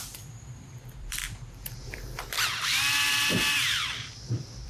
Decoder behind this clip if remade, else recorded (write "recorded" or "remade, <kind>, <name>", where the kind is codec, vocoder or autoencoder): remade, vocoder, BigVGAN v2